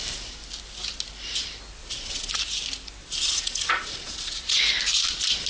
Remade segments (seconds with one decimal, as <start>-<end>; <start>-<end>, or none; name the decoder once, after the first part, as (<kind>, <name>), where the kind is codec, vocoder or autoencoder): 1.8-2.3 (vocoder, Vocos); 3.0-4.6